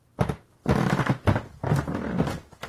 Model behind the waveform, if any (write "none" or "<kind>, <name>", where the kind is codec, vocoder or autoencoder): none